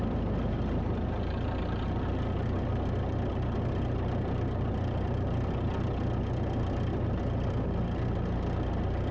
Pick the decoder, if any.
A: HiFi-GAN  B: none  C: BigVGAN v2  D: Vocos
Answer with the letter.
B